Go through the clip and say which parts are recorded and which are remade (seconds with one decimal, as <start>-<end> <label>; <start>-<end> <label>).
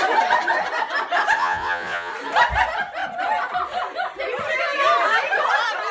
0.0-1.4 recorded; 1.4-2.1 remade; 2.1-5.9 recorded